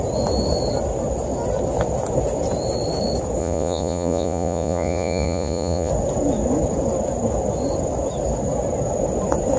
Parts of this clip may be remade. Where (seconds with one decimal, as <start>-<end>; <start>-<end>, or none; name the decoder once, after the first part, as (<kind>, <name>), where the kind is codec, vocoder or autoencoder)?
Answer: 3.4-5.9 (vocoder, Vocos)